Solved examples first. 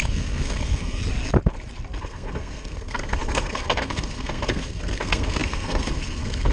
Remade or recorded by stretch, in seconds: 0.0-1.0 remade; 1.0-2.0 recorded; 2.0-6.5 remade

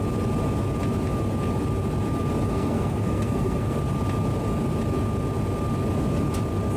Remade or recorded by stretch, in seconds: 0.0-2.5 recorded; 2.5-3.8 remade; 3.8-6.8 recorded

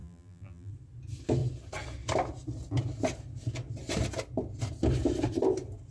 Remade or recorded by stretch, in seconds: 0.0-0.7 remade; 0.7-5.9 recorded